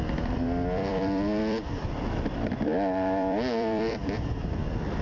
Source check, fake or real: fake